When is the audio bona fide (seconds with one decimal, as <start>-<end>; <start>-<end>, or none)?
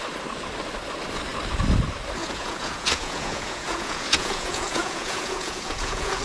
0.0-2.2